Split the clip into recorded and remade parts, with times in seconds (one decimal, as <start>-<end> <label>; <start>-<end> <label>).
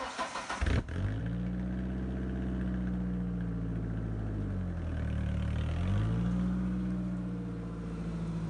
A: 0.0-8.5 recorded